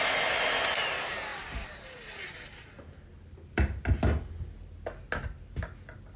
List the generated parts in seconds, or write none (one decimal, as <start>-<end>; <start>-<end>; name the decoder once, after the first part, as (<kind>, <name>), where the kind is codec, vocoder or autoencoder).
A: 1.3-3.0 (vocoder, BigVGAN v2)